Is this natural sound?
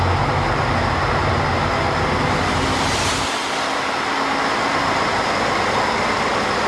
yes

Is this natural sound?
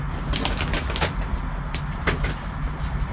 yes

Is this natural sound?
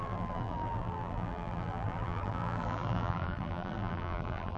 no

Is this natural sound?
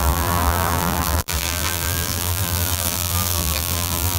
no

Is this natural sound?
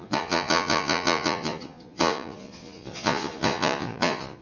no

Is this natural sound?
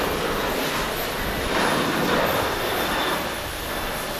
yes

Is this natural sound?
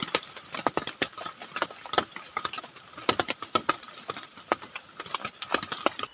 yes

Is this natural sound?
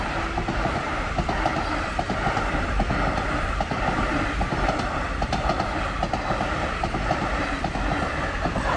no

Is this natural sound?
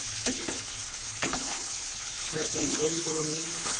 no